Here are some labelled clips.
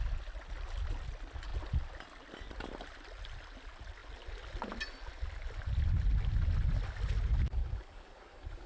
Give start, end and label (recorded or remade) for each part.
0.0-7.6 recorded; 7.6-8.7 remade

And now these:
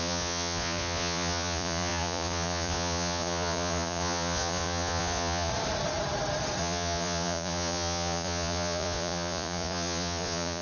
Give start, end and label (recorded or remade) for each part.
0.0-5.5 remade; 5.5-6.6 recorded; 6.6-10.6 remade

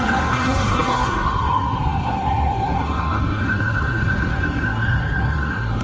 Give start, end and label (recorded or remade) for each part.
0.0-5.8 remade

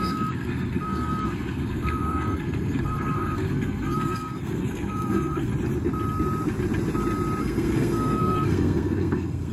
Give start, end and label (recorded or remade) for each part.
0.0-5.5 remade; 5.5-7.4 recorded; 7.4-9.5 remade

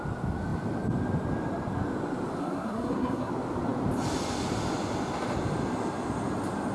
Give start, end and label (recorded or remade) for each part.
0.0-2.4 recorded; 2.4-3.3 remade; 3.3-6.7 recorded

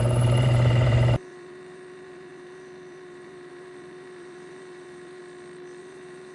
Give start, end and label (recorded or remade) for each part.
0.0-5.2 remade; 5.2-5.8 recorded; 5.8-6.3 remade

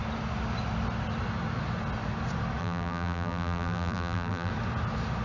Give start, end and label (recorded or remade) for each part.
0.0-2.6 recorded; 2.6-4.5 remade; 4.5-5.2 recorded

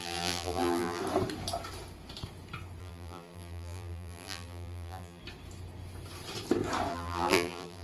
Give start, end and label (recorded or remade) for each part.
0.0-1.0 remade; 1.0-2.8 recorded; 2.8-5.2 remade; 5.2-6.9 recorded; 6.9-7.8 remade